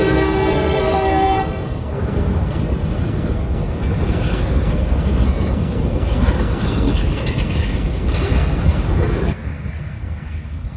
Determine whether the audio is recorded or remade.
remade